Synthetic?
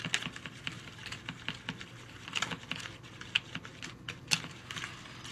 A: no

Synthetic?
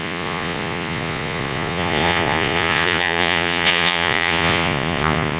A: yes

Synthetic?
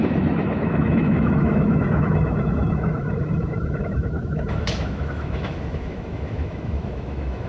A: yes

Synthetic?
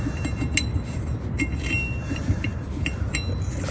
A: no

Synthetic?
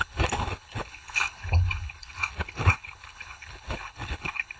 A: yes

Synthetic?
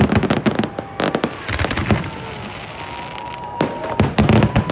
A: no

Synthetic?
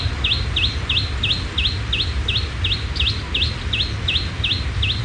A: no